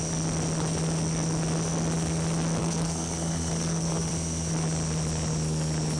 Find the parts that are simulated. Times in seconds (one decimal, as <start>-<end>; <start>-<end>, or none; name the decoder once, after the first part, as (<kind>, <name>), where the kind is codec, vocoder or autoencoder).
2.6-4.1 (codec, SNAC)